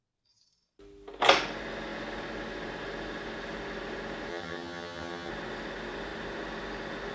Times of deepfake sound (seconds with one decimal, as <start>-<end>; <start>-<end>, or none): 4.3-5.3